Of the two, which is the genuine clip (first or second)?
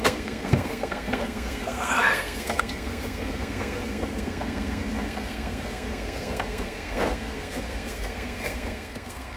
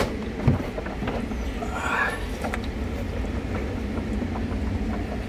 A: second